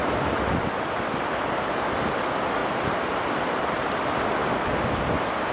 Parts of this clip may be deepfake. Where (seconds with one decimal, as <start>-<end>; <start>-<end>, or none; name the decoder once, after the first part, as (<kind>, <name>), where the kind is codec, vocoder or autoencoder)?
none